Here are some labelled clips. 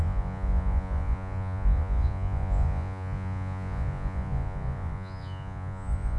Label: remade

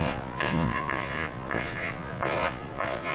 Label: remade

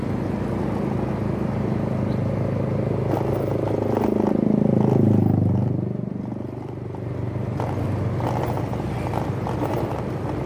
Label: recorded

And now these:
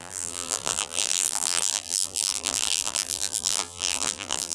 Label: remade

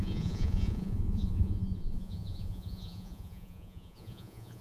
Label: remade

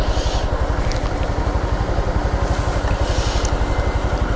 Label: recorded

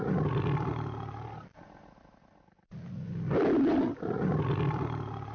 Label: recorded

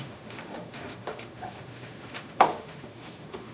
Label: remade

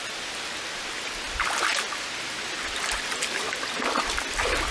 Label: recorded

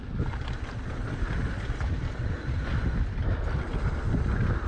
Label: recorded